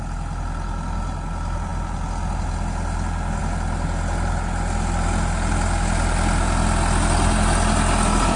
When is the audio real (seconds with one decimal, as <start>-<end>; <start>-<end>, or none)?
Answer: 0.0-8.4